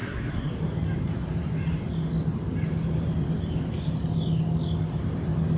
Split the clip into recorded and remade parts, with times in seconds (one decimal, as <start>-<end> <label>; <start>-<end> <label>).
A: 0.0-0.5 remade; 0.5-5.6 recorded